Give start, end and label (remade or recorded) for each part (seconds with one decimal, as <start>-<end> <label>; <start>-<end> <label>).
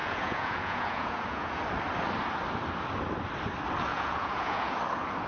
0.0-1.6 remade; 1.6-3.9 recorded; 3.9-4.7 remade; 4.7-5.3 recorded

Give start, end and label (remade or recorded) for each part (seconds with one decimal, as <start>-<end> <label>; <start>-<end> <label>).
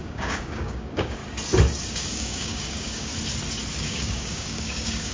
0.0-1.2 remade; 1.2-1.9 recorded; 1.9-3.1 remade; 3.1-3.7 recorded; 3.7-5.1 remade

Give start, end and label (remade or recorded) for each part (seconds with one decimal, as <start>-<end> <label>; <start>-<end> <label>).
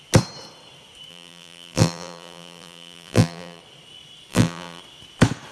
0.0-1.1 recorded; 1.1-3.6 remade; 3.6-4.3 recorded; 4.3-4.8 remade; 4.8-5.5 recorded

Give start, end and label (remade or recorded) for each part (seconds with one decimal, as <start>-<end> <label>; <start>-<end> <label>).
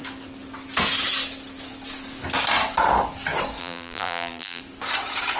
0.0-3.6 recorded; 3.6-4.6 remade; 4.6-5.4 recorded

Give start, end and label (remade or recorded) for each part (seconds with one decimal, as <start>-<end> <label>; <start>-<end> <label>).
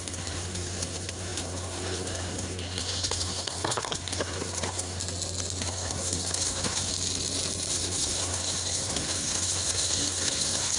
0.0-5.0 remade; 5.0-5.6 recorded; 5.6-6.9 remade; 6.9-7.7 recorded; 7.7-10.8 remade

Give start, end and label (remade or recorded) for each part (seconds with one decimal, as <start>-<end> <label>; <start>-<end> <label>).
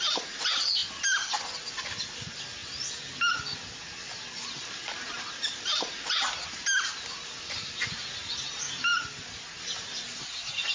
0.0-10.7 recorded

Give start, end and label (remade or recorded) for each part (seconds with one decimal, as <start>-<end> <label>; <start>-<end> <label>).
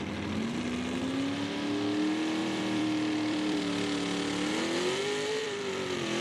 0.0-2.4 recorded; 2.4-3.6 remade; 3.6-5.4 recorded; 5.4-6.2 remade